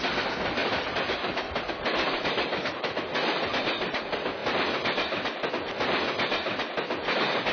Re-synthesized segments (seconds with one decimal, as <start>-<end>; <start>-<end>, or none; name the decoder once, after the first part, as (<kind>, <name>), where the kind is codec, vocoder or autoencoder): 0.6-1.7 (vocoder, BigVGAN v2); 4.4-5.5